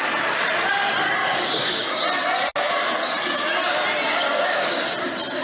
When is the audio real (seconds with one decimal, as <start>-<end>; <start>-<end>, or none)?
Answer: 0.0-1.2; 2.0-4.3; 4.8-5.4